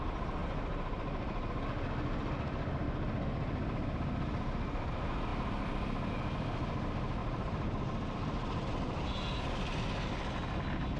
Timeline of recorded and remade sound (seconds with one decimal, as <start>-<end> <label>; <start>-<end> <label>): 0.0-7.2 recorded; 7.2-8.7 remade; 8.7-11.0 recorded